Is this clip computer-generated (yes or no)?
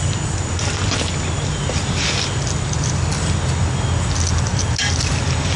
no